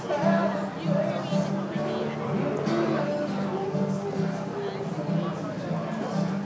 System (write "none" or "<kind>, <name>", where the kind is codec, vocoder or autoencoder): none